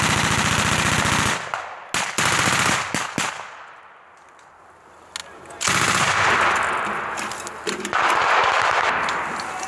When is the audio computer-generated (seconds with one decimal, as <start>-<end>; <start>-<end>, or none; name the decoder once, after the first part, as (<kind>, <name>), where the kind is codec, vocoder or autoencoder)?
none